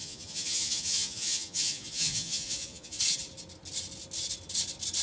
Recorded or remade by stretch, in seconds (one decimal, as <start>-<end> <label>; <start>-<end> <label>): 0.0-3.0 remade; 3.0-5.0 recorded